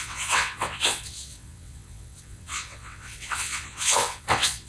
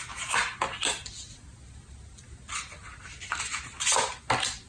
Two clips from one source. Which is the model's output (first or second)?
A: first